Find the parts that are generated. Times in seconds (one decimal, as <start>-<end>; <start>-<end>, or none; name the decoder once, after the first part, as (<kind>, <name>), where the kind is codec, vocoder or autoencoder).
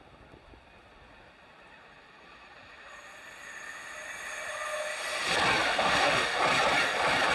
5.7-6.4 (autoencoder, DAC-VAE)